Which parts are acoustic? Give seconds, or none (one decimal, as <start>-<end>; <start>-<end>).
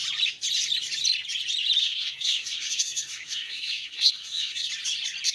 0.0-1.8; 4.7-5.3